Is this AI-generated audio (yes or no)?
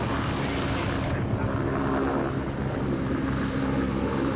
no